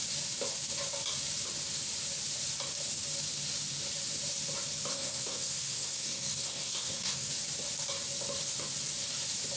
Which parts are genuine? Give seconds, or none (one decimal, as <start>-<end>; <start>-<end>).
0.0-4.9; 7.3-9.6